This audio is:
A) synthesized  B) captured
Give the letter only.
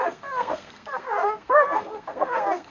A